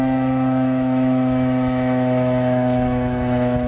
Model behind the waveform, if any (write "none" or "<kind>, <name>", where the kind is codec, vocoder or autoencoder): autoencoder, DAC-VAE